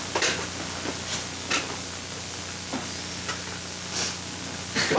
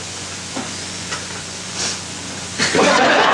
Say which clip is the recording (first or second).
first